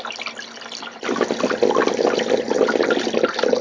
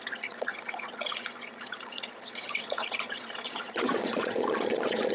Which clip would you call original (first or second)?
first